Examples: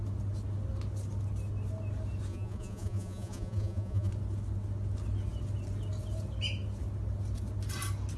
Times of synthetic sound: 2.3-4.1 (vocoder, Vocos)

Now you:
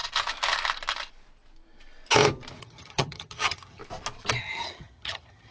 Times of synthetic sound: 2.6-3.8 (vocoder, HiFi-GAN); 4.4-5.5

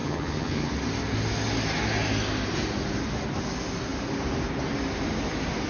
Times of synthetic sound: 0.0-0.7 (vocoder, HiFi-GAN)

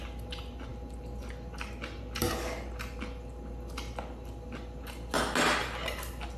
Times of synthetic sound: none

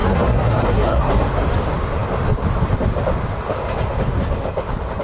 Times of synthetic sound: 0.0-1.1 (codec, SNAC)

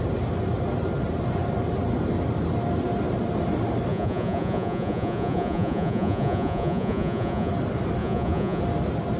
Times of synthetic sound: 3.9-7.5 (vocoder, Vocos); 8.0-8.6

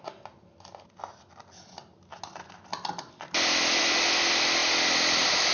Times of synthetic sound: none

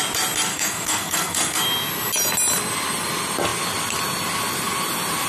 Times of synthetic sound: 0.5-1.6 (codec, SNAC)